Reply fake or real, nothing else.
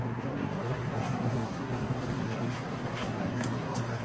fake